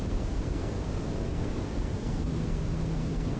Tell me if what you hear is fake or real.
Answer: fake